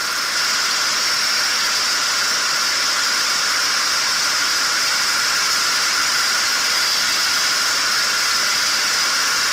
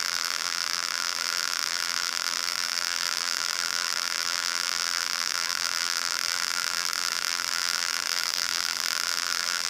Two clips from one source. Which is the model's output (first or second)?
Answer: second